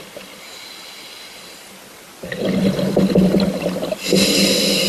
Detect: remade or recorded recorded